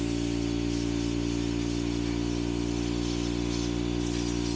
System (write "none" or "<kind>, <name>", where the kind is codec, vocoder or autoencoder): none